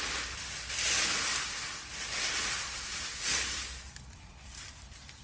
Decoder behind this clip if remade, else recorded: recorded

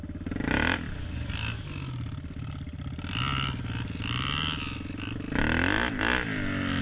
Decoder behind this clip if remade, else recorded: recorded